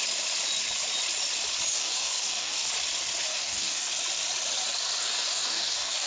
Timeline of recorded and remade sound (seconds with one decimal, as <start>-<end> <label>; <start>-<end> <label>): 0.0-1.7 recorded; 1.7-2.7 remade; 2.7-3.3 recorded; 3.3-3.9 remade; 3.9-5.0 recorded; 5.0-6.1 remade